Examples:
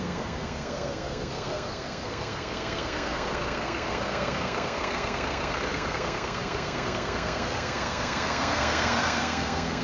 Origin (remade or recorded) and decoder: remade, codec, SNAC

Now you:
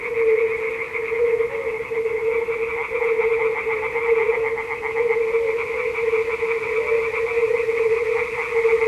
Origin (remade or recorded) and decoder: recorded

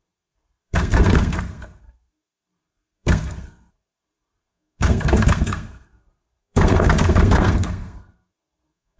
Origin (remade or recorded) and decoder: remade, codec, SNAC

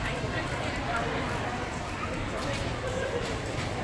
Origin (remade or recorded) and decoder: remade, vocoder, BigVGAN v2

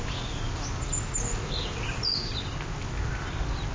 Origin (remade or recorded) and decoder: recorded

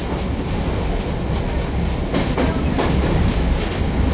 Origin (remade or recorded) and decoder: recorded